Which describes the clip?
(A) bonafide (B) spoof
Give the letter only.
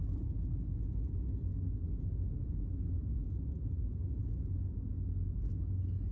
A